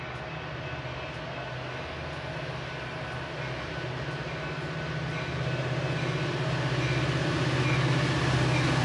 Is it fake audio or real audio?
real